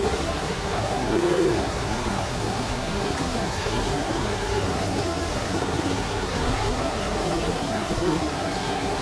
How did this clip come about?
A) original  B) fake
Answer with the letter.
B